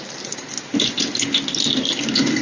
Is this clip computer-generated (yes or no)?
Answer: no